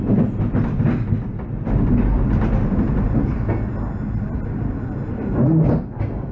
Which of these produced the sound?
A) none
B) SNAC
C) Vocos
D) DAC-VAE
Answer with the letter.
A